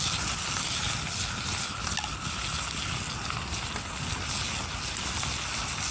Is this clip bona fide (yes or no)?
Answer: yes